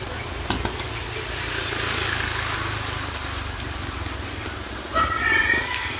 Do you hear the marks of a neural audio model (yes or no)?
no